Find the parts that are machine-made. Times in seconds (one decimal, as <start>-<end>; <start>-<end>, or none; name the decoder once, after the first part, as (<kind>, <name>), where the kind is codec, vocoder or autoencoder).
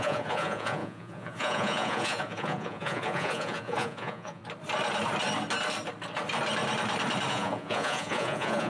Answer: 0.0-4.4 (vocoder, Vocos); 7.3-8.7